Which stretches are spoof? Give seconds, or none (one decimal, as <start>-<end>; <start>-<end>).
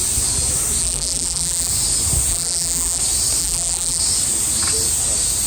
0.8-1.7; 2.3-3.0; 3.4-4.0